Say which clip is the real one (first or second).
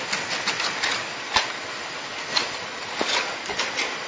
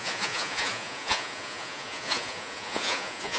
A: first